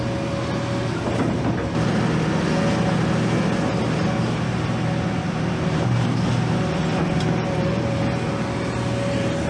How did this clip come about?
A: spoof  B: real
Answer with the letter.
B